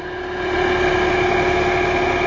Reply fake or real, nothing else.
real